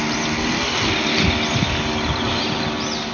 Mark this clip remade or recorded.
recorded